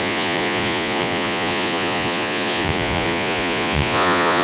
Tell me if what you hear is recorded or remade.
remade